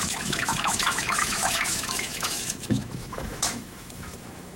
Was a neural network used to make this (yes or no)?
yes